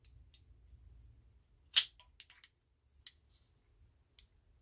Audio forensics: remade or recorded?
recorded